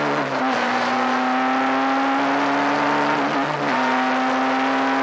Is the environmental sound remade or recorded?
recorded